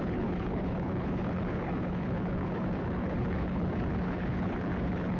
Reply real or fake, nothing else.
fake